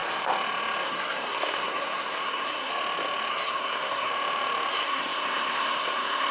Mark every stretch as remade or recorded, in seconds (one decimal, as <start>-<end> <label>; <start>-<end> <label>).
0.0-0.8 recorded; 0.8-2.7 remade; 2.7-3.3 recorded; 3.3-4.1 remade; 4.1-4.7 recorded; 4.7-6.3 remade